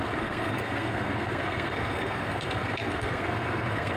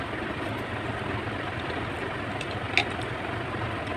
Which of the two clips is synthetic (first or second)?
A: first